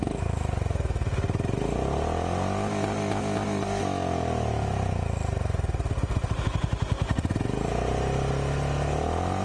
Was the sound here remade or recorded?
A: recorded